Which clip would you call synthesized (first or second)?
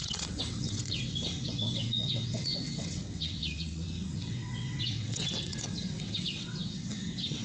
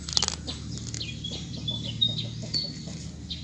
first